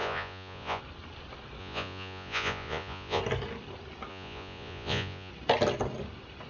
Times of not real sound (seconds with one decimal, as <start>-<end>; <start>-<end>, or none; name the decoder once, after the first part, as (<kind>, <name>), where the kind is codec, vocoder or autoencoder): 0.0-0.8 (vocoder, Vocos); 1.6-3.2; 4.1-5.3